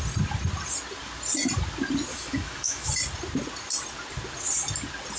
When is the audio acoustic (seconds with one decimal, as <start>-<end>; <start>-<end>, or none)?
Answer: 0.0-2.1; 2.9-5.2